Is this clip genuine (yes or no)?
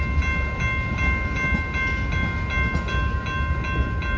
yes